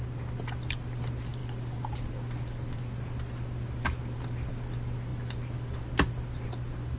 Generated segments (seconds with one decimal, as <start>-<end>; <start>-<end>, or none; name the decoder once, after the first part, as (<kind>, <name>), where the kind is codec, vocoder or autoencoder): none